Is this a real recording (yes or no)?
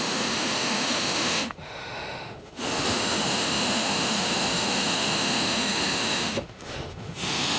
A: no